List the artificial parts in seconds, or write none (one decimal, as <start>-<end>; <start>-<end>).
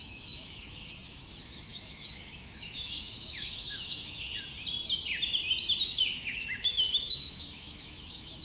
0.0-4.3; 5.8-8.4